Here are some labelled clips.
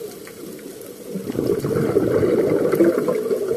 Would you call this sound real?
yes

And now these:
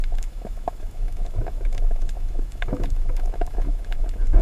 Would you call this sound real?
no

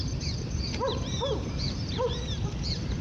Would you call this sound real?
no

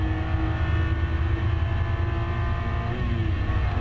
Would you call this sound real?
yes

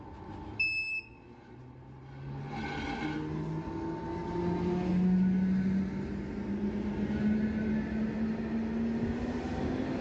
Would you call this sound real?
yes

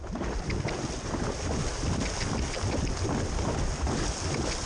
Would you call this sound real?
yes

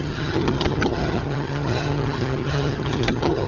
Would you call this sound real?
no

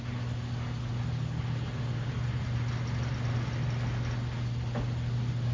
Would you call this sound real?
yes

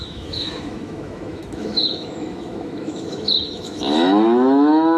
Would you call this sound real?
no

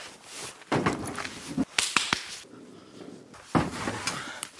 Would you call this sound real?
yes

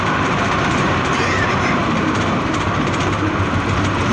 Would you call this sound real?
no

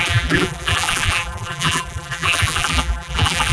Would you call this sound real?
no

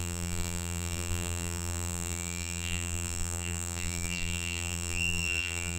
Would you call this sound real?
no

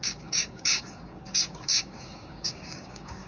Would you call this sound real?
no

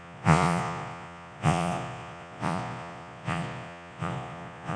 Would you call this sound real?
no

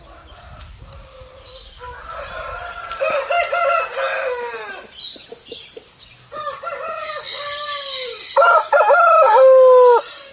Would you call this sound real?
yes